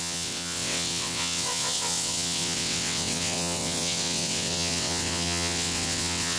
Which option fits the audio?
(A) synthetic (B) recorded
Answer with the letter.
A